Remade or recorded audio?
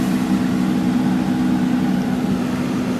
recorded